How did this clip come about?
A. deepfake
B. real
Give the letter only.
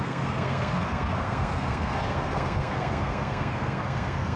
A